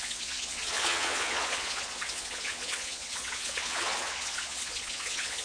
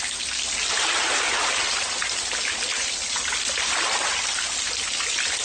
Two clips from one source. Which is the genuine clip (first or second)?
second